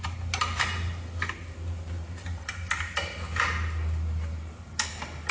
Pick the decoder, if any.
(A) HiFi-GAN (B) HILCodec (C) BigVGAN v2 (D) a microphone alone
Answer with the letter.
D